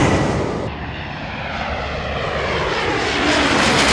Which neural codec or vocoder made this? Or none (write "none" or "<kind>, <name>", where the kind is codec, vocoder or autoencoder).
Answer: none